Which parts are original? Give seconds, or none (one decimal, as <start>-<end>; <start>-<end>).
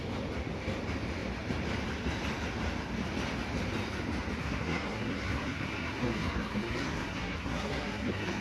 0.0-4.4